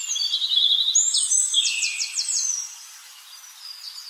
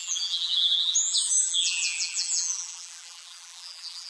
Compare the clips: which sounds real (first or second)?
first